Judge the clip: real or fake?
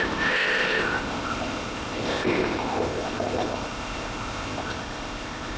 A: fake